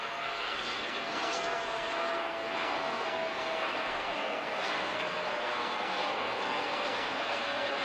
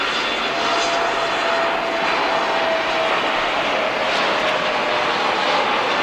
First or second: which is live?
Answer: second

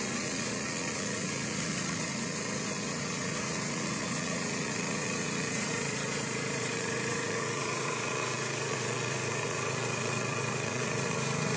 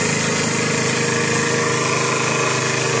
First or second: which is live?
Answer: second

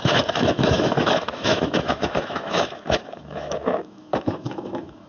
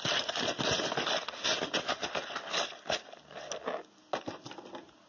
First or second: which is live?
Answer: second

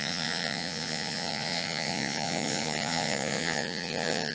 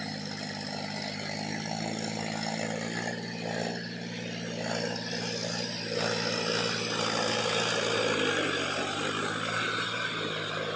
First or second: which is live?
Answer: second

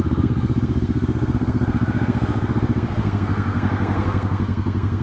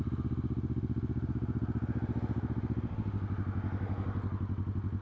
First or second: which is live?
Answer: second